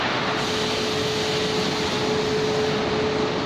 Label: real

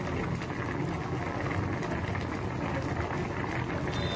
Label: real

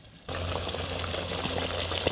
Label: real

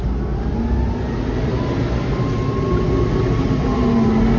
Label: real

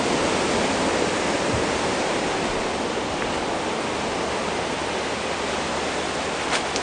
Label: real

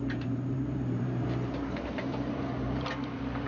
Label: fake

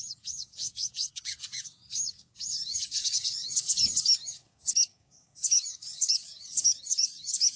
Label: fake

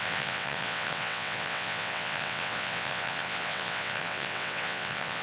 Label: fake